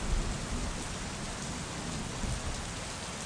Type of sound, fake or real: real